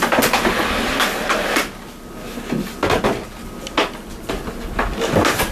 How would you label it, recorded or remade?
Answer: recorded